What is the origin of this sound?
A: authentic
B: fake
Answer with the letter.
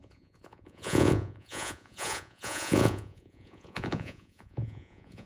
B